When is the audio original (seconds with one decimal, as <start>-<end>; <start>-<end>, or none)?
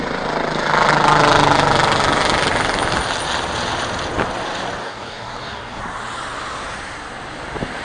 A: 0.0-4.8; 5.8-7.8